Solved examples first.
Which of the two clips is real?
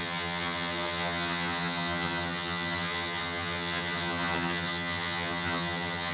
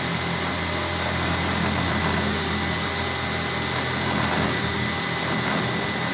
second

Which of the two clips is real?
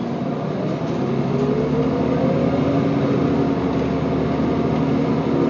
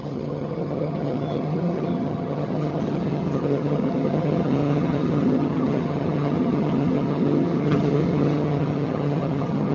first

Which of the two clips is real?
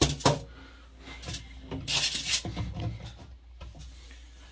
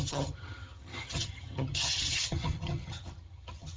first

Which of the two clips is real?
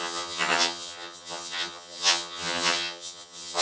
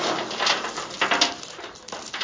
second